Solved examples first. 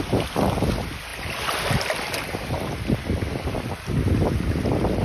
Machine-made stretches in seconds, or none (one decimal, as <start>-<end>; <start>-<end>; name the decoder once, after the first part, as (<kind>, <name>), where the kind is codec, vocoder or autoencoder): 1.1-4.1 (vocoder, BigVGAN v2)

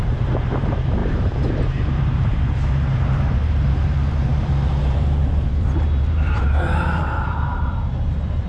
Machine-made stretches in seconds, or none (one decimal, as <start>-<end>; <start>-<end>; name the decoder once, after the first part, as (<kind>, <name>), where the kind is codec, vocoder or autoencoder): 0.0-8.5 (vocoder, BigVGAN v2)

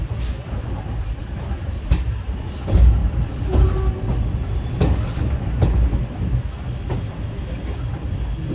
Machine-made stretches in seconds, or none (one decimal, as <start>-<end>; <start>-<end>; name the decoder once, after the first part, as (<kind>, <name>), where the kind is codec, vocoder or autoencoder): none

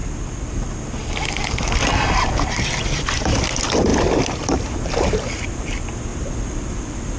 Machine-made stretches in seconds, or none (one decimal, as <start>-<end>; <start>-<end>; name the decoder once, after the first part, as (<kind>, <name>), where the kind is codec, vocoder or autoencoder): 3.4-7.2 (vocoder, BigVGAN v2)

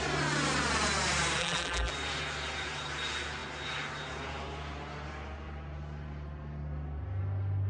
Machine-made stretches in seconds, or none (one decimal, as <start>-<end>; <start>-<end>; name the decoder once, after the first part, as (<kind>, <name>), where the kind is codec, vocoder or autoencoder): 1.4-1.9 (vocoder, BigVGAN v2)

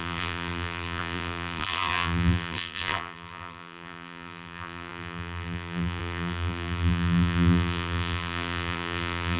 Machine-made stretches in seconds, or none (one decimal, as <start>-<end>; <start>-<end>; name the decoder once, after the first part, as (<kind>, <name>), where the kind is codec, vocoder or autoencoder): 0.0-9.4 (vocoder, BigVGAN v2)

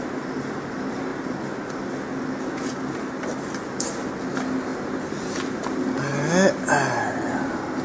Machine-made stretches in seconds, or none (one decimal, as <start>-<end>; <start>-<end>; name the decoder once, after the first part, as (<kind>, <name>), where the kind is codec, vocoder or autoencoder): none

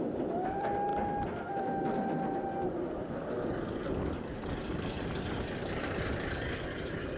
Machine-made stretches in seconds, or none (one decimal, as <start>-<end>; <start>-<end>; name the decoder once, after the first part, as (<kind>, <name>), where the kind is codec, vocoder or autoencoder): 0.0-0.9 (vocoder, BigVGAN v2); 5.2-7.2